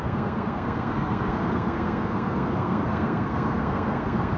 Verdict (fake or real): fake